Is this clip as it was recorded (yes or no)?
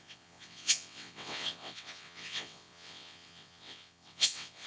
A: no